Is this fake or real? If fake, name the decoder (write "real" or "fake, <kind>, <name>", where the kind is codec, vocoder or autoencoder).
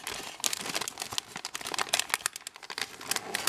real